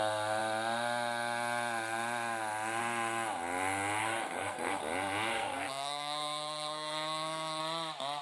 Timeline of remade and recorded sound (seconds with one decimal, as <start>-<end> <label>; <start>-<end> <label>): 0.0-4.0 recorded; 4.0-4.8 remade; 4.8-5.3 recorded; 5.3-7.6 remade; 7.6-8.2 recorded